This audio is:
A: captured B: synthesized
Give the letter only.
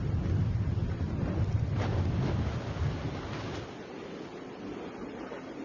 A